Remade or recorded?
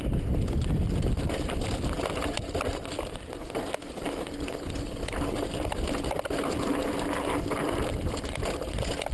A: recorded